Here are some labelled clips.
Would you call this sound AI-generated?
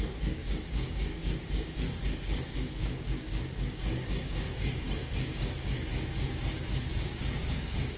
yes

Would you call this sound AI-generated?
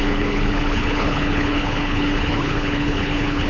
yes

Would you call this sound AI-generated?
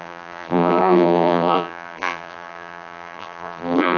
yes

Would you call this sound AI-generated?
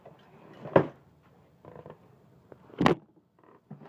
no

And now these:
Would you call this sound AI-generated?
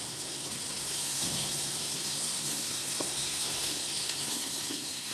yes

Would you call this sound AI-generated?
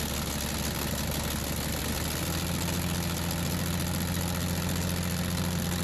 no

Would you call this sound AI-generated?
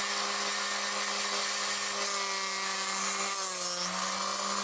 no